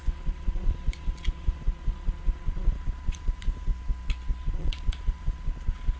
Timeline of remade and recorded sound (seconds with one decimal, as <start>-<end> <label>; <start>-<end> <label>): 0.0-3.7 remade; 3.7-4.4 recorded; 4.4-6.0 remade